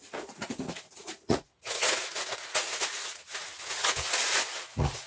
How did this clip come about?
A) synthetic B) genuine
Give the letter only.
A